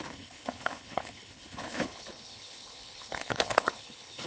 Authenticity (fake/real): fake